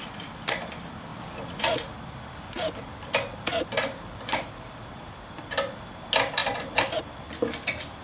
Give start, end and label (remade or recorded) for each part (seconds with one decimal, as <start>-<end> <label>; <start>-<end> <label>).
0.0-8.0 recorded